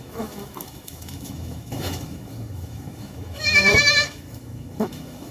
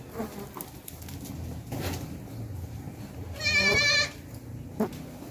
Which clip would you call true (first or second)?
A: second